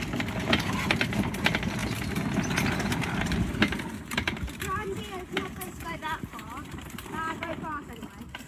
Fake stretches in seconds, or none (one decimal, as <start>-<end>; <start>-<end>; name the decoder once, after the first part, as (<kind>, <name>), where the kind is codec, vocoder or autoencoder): 0.0-1.8 (vocoder, BigVGAN v2); 2.5-7.5